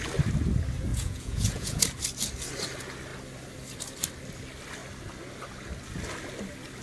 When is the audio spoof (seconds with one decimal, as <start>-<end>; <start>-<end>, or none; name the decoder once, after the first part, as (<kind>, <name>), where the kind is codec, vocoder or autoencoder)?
0.9-1.8 (vocoder, Vocos)